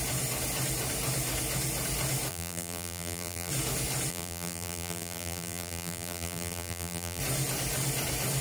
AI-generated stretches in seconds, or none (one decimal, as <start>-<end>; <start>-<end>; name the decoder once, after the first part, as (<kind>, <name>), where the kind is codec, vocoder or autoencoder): 2.3-3.5 (vocoder, BigVGAN v2); 4.1-7.2